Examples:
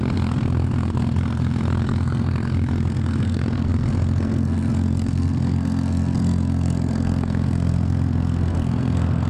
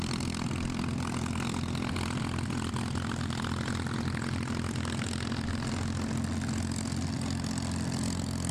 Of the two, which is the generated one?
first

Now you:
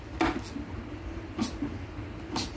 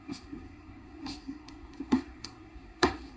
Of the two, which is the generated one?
second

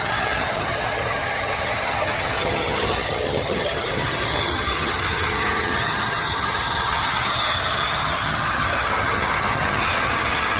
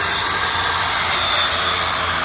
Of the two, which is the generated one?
first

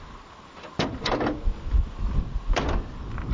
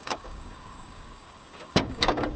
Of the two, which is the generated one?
second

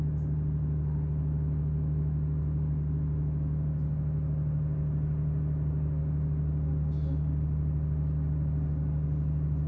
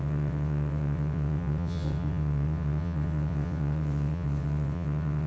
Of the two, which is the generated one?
second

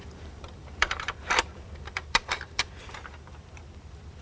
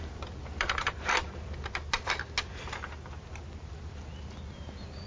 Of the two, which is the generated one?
first